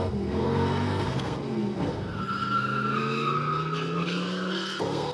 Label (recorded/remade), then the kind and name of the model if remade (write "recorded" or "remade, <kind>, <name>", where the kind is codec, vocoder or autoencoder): remade, codec, SNAC